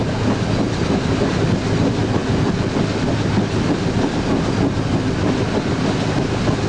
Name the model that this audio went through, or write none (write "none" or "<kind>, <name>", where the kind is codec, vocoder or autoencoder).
none